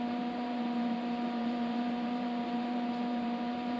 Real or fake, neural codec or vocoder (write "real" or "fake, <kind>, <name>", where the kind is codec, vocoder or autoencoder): fake, vocoder, BigVGAN v2